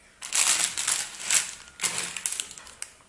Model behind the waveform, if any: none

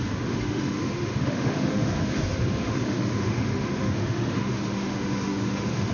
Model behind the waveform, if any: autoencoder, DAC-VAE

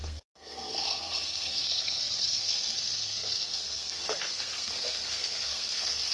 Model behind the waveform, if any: codec, SNAC